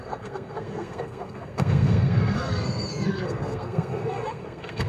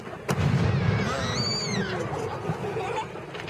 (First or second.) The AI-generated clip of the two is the first